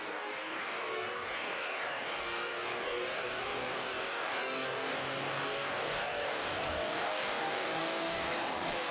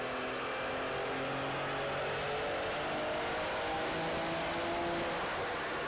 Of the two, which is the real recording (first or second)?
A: second